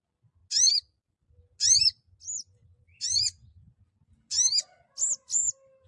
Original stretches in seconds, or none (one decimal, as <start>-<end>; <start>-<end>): 0.0-5.9